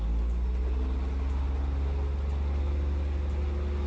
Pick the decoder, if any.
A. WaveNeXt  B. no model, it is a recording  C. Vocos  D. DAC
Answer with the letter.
B